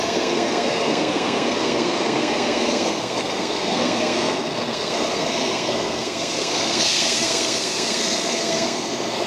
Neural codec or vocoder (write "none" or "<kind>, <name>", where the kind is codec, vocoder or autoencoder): codec, SNAC